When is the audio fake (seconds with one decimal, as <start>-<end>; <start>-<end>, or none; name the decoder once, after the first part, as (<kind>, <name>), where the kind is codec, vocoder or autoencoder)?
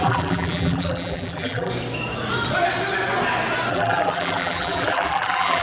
0.0-1.7 (vocoder, BigVGAN v2); 3.7-5.6